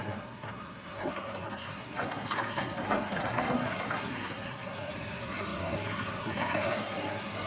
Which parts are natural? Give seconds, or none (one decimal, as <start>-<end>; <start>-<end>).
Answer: none